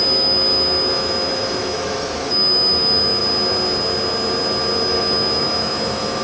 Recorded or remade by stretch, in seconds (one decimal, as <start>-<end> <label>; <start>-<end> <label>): 0.0-3.2 remade; 3.2-5.0 recorded; 5.0-6.2 remade